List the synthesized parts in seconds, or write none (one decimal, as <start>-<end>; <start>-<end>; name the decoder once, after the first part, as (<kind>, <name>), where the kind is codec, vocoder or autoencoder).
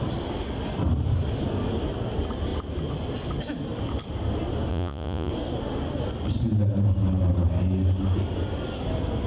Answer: 4.7-5.3 (vocoder, Vocos)